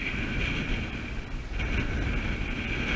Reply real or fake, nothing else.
real